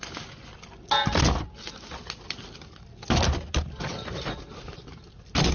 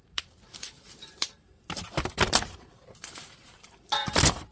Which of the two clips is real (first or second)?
first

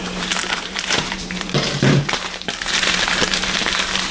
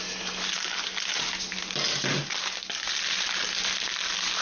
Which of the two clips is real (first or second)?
second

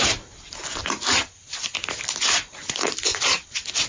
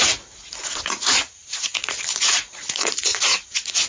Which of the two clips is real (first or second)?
first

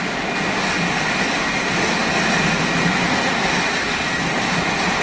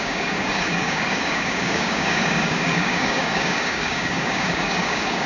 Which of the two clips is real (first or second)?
first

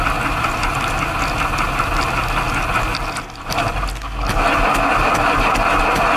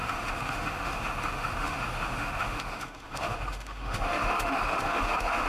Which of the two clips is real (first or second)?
first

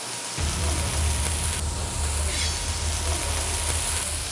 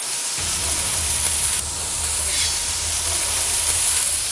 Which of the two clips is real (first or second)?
first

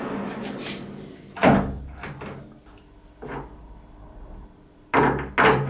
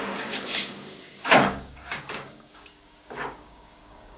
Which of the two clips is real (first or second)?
first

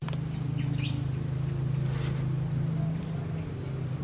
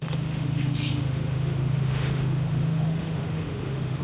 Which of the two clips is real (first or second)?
first